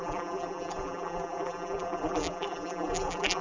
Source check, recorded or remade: remade